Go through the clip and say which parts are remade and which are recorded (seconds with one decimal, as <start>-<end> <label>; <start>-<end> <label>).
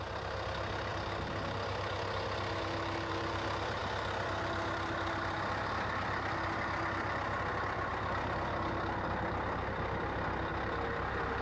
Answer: 0.0-11.4 recorded